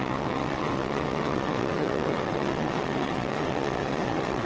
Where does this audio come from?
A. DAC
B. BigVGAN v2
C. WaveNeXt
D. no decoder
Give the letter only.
C